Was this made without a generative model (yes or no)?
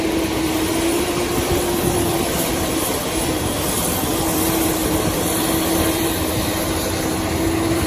no